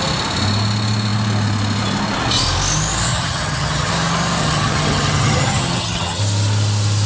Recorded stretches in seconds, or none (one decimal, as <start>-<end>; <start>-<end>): 0.0-3.1; 3.9-4.4; 6.2-7.1